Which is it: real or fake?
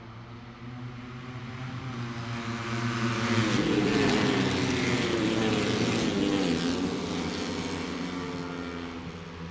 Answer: real